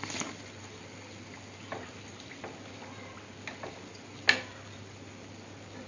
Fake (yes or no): no